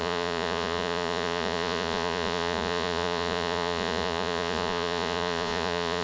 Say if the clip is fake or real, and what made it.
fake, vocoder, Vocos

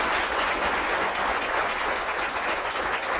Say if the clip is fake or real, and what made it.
fake, vocoder, Vocos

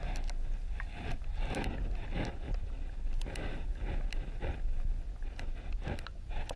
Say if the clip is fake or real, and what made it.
real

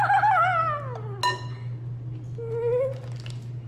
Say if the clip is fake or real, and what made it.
real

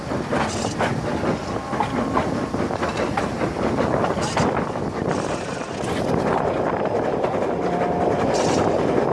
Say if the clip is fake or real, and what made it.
real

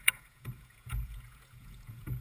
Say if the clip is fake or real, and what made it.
fake, vocoder, Vocos